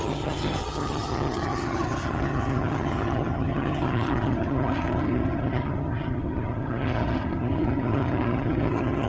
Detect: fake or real fake